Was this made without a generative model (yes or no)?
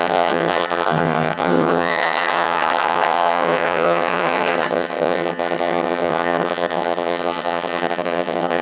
no